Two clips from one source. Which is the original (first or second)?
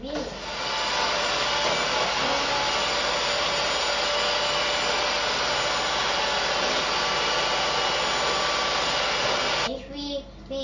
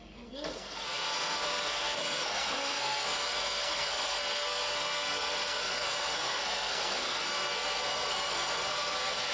first